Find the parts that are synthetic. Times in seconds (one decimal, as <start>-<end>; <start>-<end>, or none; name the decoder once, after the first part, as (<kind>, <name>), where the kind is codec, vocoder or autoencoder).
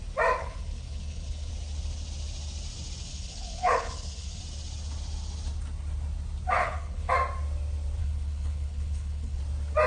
0.4-1.5 (codec, HILCodec); 3.1-4.4; 6.6-7.1; 8.0-9.4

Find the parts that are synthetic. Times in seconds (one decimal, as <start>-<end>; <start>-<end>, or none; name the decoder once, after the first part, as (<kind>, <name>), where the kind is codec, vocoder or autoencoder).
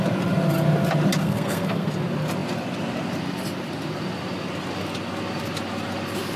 1.2-1.9 (codec, SNAC)